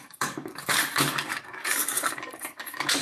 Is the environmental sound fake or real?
fake